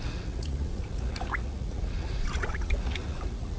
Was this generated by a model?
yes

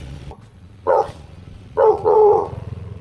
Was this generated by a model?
yes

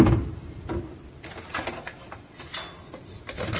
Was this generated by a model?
no